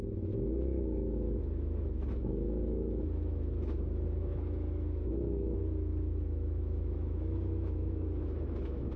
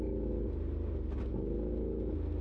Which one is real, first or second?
second